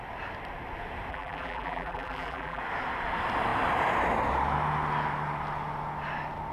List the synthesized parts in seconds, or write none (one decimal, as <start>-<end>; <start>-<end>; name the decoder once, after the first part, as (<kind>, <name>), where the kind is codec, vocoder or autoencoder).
1.1-2.6 (vocoder, BigVGAN v2)